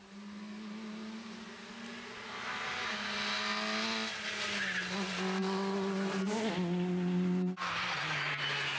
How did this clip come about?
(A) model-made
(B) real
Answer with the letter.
B